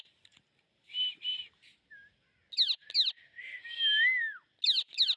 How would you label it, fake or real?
real